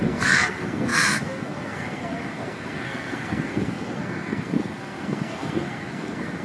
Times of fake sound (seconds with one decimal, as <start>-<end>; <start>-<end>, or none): 0.0-6.4